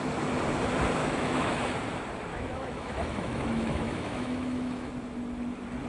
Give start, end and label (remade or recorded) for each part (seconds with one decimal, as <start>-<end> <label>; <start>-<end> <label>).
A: 0.0-1.0 recorded; 1.0-1.6 remade; 1.6-2.3 recorded; 2.3-4.9 remade; 4.9-5.9 recorded